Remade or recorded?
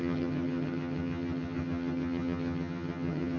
remade